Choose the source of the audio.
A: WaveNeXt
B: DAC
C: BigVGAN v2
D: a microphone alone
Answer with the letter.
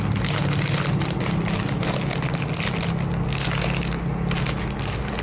D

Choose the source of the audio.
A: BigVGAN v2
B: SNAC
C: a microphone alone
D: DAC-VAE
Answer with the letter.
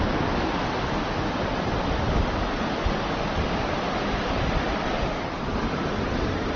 C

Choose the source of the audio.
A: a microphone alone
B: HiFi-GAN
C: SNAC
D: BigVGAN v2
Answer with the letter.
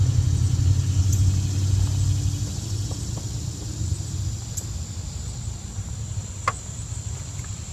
A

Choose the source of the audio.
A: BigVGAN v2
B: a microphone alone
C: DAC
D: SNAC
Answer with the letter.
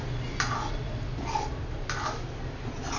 B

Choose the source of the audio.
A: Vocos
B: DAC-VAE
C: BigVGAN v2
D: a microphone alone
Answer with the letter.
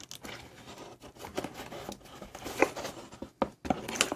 D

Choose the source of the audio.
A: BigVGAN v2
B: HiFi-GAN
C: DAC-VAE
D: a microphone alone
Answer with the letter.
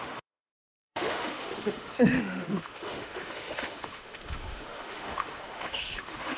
C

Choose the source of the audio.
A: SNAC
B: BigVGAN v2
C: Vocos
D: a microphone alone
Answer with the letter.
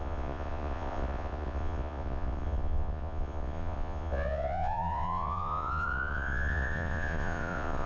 C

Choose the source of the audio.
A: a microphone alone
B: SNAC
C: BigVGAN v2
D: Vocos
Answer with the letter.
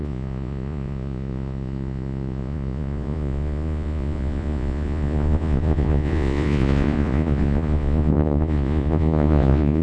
D